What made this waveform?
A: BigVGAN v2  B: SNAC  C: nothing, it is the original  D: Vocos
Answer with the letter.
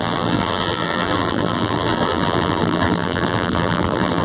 A